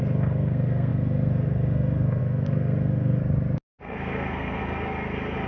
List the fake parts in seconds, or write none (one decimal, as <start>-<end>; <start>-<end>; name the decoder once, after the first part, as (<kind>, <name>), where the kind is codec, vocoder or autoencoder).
0.0-3.2 (codec, SNAC); 3.8-4.6